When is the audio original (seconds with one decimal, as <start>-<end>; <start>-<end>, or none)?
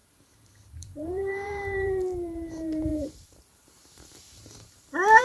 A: none